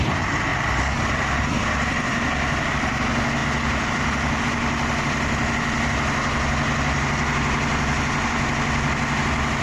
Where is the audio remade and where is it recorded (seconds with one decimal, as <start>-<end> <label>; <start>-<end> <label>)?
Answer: 0.0-0.5 recorded; 0.5-2.7 remade; 2.7-3.4 recorded; 3.4-4.4 remade; 4.4-9.6 recorded